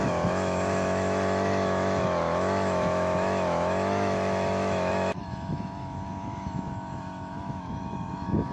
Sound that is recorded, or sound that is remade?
remade